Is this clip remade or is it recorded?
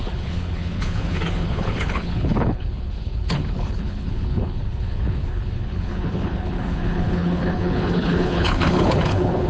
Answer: remade